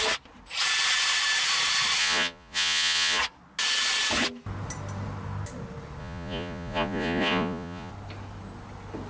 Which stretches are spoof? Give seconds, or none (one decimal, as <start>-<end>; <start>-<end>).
2.0-3.2; 6.0-7.9

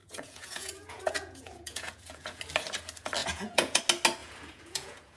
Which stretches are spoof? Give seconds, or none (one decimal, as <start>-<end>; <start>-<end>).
0.0-2.4; 3.2-3.8; 4.2-5.2

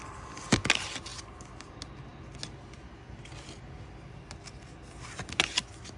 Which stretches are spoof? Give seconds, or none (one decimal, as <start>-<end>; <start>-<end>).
none